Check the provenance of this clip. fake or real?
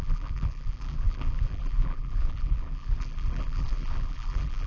fake